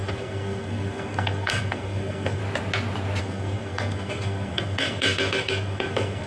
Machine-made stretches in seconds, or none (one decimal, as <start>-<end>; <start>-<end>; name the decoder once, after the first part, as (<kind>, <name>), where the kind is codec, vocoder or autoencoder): 0.0-2.4 (codec, SNAC); 3.2-6.3